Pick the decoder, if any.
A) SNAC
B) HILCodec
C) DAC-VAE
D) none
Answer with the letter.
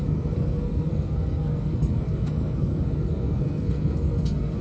A